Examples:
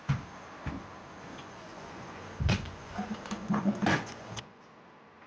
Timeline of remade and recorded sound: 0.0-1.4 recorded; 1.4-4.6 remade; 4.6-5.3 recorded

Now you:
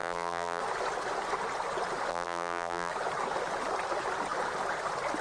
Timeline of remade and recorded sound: 0.0-0.6 remade; 0.6-2.1 recorded; 2.1-2.9 remade; 2.9-5.2 recorded